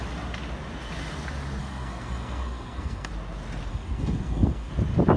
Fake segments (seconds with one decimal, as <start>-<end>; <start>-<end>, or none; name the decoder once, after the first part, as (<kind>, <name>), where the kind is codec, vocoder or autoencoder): 1.6-3.1 (codec, SNAC); 3.7-4.7